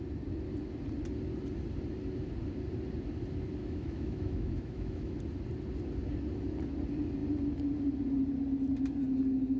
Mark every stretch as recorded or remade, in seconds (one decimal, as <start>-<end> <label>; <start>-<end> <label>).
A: 0.0-3.6 recorded; 3.6-5.2 remade; 5.2-9.6 recorded